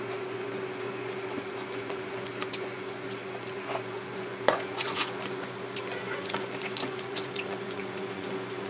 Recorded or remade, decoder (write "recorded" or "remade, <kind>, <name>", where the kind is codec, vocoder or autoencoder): remade, vocoder, Vocos